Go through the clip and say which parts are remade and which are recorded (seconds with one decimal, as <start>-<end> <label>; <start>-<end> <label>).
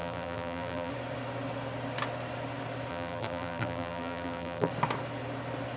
0.0-0.9 remade; 0.9-2.9 recorded; 2.9-4.7 remade; 4.7-5.8 recorded